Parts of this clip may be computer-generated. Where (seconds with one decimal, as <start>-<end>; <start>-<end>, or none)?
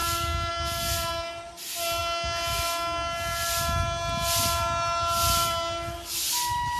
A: none